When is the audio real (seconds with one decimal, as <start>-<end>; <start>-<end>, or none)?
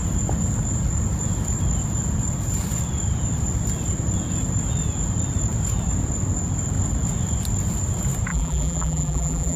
0.0-8.3